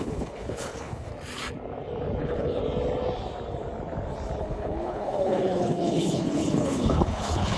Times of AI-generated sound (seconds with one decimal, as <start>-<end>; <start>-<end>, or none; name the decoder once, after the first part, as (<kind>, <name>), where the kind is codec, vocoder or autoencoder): 0.0-1.1 (codec, HILCodec); 2.2-2.6; 4.4-7.6